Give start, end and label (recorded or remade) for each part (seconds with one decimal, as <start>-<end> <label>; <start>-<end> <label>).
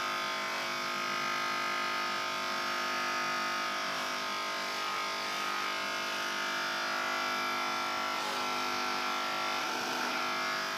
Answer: 0.0-9.6 recorded; 9.6-10.2 remade; 10.2-10.8 recorded